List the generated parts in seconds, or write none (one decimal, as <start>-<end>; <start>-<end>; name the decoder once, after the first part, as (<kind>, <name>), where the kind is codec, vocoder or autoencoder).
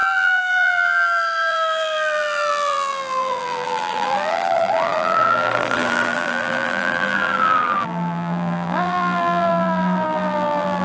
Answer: 0.0-10.8 (vocoder, BigVGAN v2)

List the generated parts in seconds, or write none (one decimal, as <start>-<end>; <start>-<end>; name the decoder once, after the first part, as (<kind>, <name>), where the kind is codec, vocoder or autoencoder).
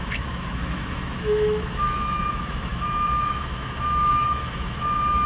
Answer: 0.0-5.3 (autoencoder, DAC-VAE)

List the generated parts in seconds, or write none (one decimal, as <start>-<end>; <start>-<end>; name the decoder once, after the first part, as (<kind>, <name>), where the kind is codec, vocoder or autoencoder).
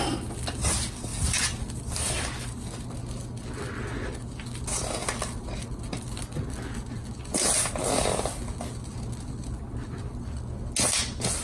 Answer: none